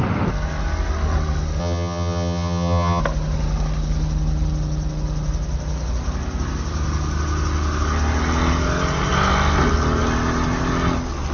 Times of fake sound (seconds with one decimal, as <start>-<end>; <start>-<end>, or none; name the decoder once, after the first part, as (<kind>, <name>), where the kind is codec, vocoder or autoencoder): 1.6-3.0 (vocoder, HiFi-GAN)